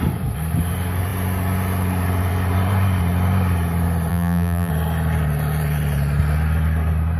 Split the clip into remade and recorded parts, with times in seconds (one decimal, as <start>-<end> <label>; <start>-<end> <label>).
0.0-4.1 recorded; 4.1-4.7 remade; 4.7-7.2 recorded